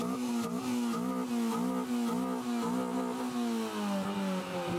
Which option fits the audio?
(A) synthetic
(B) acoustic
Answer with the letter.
B